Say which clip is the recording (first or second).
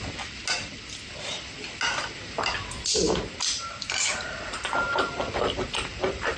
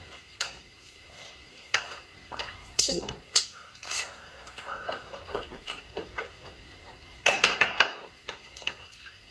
first